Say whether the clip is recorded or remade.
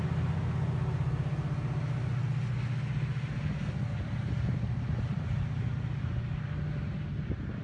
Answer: recorded